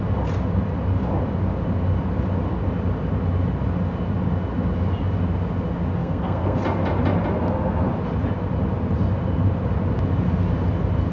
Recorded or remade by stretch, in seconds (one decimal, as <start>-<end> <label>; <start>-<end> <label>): 0.0-6.0 recorded; 6.0-6.6 remade; 6.6-11.1 recorded